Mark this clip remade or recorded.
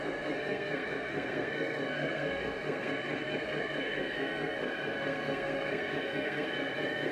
remade